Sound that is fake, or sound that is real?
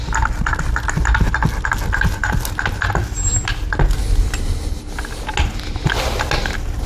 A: real